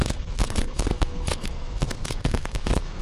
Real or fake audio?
fake